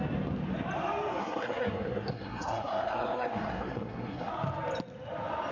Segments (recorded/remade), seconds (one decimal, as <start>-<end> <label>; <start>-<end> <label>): 0.0-1.2 recorded; 1.2-4.3 remade; 4.3-5.5 recorded